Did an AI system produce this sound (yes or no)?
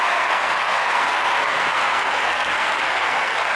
yes